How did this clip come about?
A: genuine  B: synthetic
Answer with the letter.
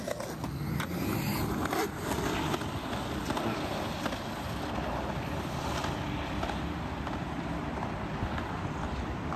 A